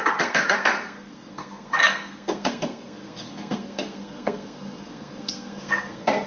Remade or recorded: remade